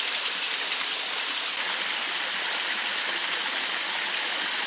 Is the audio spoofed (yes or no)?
no